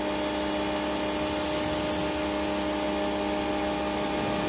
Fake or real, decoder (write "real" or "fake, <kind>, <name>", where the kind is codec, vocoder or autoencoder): real